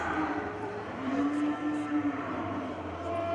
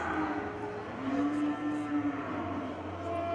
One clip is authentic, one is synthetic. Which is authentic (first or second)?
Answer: second